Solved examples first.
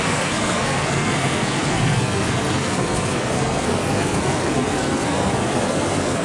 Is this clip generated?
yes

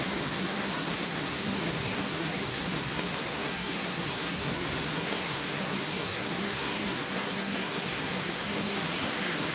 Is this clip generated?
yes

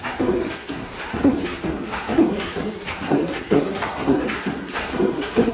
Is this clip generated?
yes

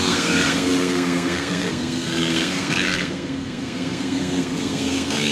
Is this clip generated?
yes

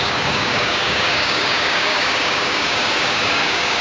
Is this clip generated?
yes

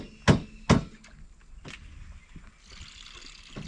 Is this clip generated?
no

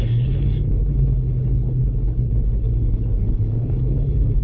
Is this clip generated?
yes